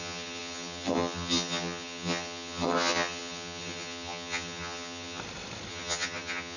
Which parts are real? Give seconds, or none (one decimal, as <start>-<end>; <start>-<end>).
5.2-5.7